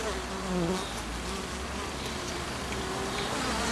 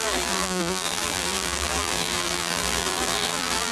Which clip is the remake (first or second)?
second